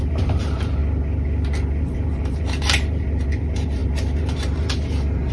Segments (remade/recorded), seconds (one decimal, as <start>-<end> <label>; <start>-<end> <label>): 0.0-0.8 remade; 0.8-1.8 recorded; 1.8-5.3 remade